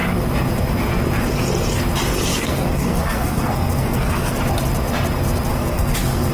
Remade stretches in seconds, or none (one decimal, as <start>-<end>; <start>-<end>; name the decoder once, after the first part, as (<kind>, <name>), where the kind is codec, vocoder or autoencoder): 2.3-4.4 (codec, SNAC); 5.5-6.3